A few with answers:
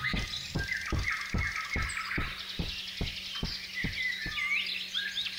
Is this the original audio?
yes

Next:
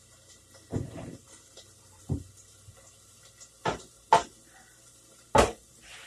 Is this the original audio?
no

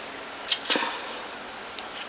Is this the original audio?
no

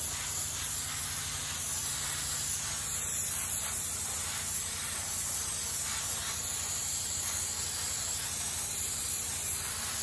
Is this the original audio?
yes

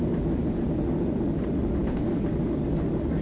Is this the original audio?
yes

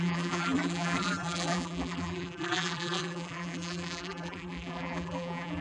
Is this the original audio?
no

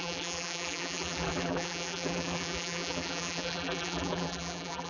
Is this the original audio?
no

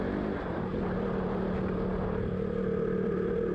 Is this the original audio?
yes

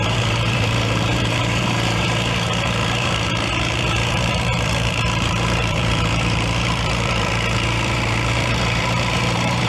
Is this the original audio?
no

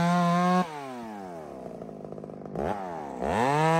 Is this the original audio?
yes